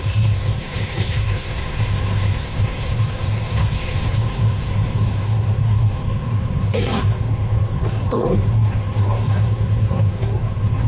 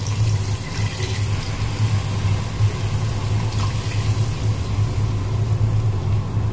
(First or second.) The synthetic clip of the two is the first